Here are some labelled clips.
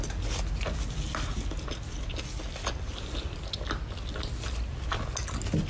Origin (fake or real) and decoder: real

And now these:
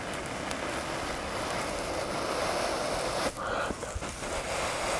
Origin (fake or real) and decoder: real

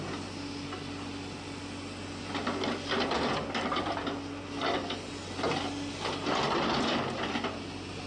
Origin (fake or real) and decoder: real